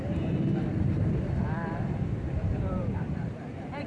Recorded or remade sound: remade